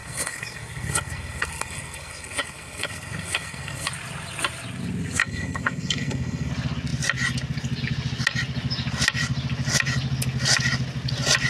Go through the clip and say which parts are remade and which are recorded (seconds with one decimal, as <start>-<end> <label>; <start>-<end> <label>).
0.0-3.9 remade; 3.9-5.2 recorded; 5.2-6.5 remade; 6.5-11.5 recorded